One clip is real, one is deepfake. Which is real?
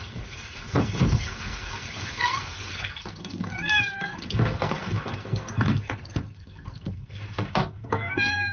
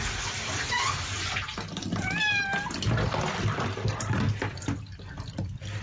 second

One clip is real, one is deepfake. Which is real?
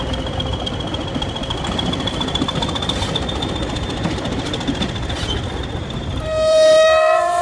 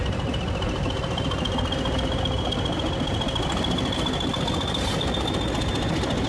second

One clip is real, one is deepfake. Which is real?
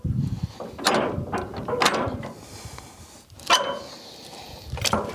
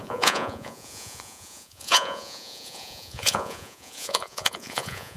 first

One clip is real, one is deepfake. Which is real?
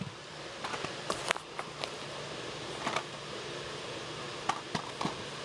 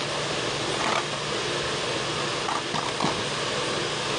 second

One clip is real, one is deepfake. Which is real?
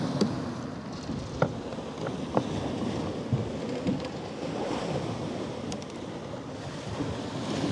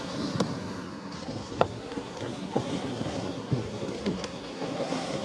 first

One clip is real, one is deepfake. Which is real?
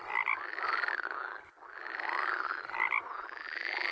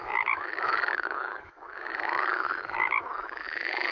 first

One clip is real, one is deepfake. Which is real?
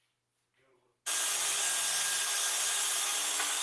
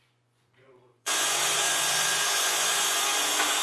first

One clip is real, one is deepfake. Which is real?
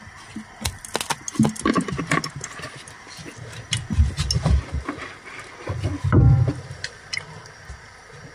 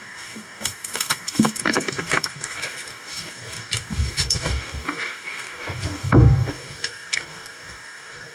first